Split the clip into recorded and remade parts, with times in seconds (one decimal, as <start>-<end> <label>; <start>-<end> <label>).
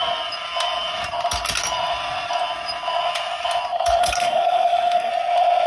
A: 0.0-4.0 recorded; 4.0-5.1 remade; 5.1-5.7 recorded